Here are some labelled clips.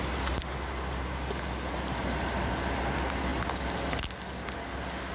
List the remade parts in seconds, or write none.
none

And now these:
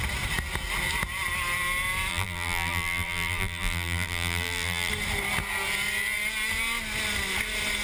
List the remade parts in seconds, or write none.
2.1-4.9 (vocoder, BigVGAN v2)

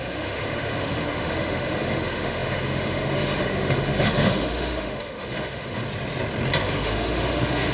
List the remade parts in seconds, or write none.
0.0-5.8 (autoencoder, DAC-VAE); 6.6-7.7

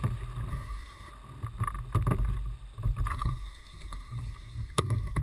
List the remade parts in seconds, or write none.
0.5-1.1 (codec, SNAC); 3.1-5.2

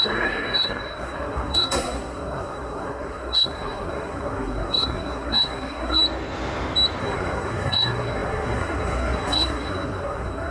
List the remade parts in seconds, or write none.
0.0-6.0 (codec, SNAC); 7.0-10.5

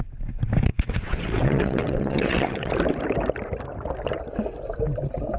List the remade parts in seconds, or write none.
0.7-2.7 (vocoder, WaveNeXt)

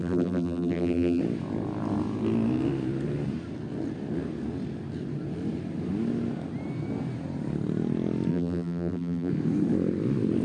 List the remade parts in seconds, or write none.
0.0-1.2 (vocoder, BigVGAN v2); 8.3-9.3

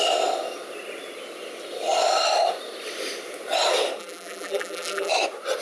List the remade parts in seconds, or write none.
4.0-5.1 (vocoder, BigVGAN v2)